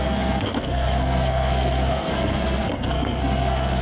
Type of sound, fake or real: fake